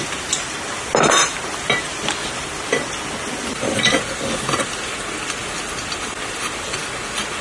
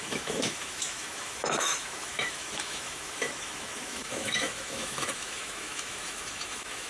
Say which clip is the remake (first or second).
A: second